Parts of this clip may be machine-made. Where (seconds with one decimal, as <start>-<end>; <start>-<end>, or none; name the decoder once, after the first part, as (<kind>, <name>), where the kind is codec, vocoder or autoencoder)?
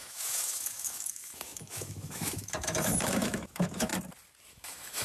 0.0-3.9 (autoencoder, DAC-VAE); 4.5-5.0